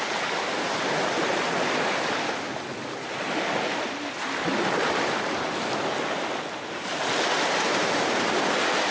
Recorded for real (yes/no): yes